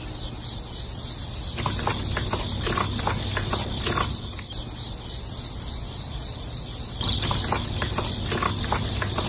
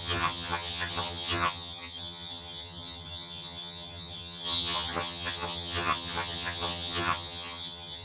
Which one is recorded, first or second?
first